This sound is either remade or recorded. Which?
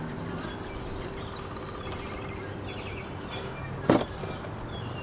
recorded